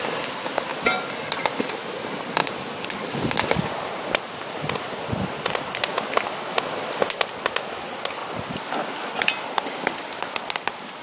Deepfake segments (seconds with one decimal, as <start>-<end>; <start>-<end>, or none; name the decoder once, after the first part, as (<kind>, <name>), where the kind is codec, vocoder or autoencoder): none

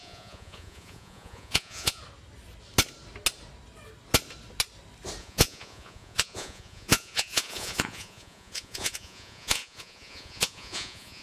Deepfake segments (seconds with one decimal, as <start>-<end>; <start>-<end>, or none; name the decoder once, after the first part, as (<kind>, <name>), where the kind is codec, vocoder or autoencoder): 0.0-2.0 (vocoder, Vocos); 5.2-11.2

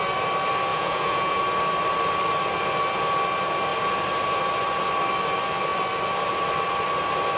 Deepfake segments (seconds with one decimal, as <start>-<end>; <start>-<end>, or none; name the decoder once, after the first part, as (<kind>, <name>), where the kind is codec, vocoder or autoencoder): 0.7-1.4 (vocoder, Vocos)

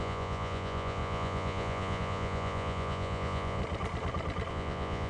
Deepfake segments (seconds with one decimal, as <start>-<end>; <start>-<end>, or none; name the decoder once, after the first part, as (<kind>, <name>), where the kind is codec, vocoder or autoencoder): 0.0-3.6 (vocoder, Vocos); 4.5-5.1

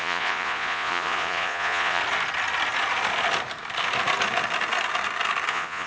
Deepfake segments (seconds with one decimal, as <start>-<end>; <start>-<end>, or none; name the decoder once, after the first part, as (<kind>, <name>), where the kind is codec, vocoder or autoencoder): 0.0-2.0 (vocoder, Vocos); 5.5-5.9

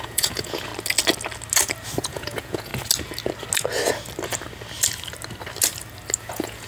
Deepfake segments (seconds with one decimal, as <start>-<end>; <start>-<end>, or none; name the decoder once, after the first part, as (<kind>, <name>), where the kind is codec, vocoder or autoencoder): 0.0-0.7 (vocoder, Vocos); 2.0-2.7; 6.2-6.7